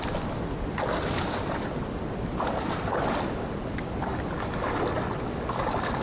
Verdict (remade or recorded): recorded